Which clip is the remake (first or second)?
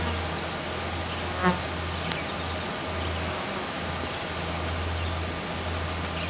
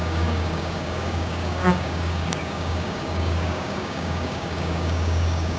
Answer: second